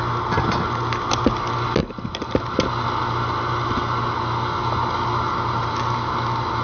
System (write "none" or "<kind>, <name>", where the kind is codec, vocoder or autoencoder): none